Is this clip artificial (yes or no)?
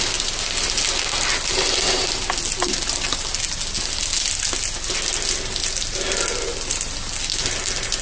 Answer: no